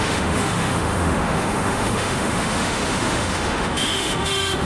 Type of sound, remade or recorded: remade